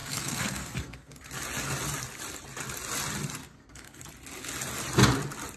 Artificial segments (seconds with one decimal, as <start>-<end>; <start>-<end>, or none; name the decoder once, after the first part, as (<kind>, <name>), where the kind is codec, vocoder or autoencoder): 0.0-1.3 (codec, SNAC); 3.4-4.1